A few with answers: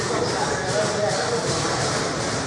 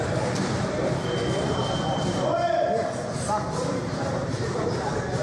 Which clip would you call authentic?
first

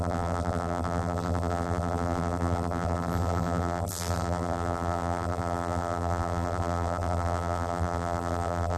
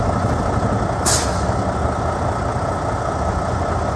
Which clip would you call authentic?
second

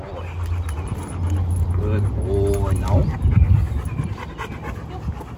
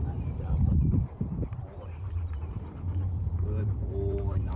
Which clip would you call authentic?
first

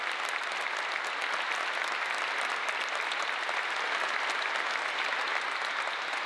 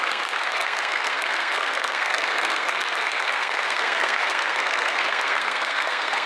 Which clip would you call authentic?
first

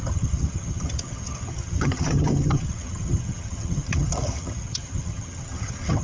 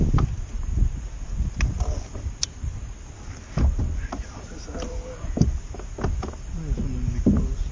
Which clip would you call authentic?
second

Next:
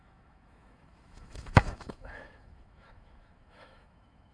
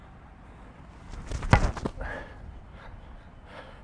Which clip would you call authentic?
second